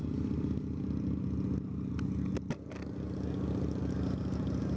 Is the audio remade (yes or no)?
no